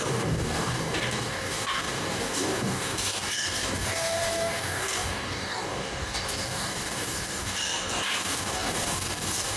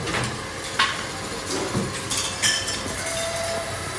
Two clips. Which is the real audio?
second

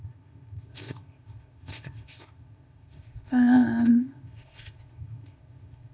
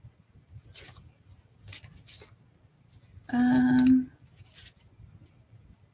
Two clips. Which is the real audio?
second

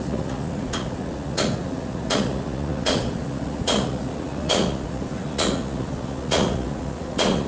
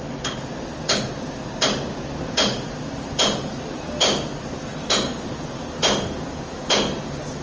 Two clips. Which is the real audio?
second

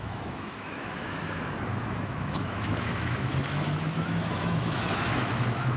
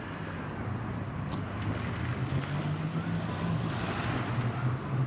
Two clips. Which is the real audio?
second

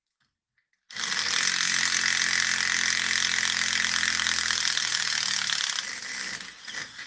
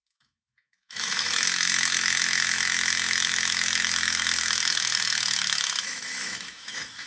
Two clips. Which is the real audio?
first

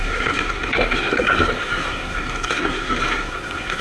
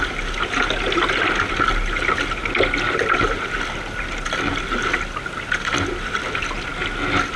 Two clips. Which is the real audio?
second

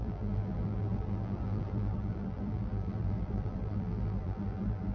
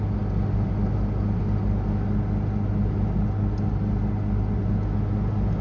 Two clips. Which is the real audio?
second